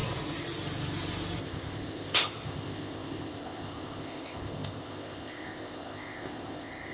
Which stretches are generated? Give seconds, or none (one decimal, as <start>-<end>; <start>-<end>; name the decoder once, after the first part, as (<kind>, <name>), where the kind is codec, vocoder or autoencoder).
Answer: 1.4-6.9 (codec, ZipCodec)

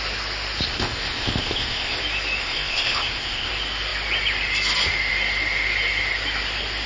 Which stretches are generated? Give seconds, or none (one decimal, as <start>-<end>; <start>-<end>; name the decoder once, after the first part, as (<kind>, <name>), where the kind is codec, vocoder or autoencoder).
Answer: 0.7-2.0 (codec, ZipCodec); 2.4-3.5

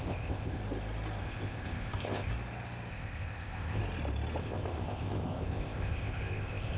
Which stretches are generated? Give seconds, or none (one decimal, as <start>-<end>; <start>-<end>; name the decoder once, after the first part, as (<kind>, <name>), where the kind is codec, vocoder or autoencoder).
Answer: 0.0-0.6 (codec, ZipCodec); 1.2-2.3; 2.9-3.8; 4.4-6.8

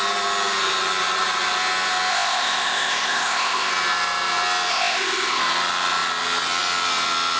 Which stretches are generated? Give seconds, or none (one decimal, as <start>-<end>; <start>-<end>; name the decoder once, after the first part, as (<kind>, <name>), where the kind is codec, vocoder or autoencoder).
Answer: 2.1-3.7 (codec, ZipCodec); 4.7-5.4

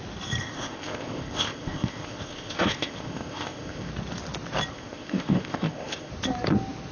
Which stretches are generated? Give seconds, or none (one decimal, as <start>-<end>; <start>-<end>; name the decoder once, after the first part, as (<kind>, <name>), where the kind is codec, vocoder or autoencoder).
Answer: 0.4-3.9 (codec, ZipCodec); 4.7-6.1

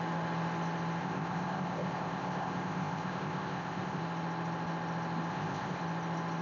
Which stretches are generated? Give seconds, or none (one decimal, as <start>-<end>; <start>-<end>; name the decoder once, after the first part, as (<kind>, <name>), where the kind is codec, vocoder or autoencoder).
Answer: 1.0-4.0 (codec, ZipCodec); 5.3-5.8